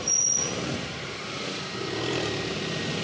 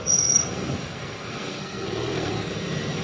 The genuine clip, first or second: first